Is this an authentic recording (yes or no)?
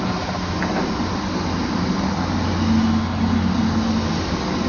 yes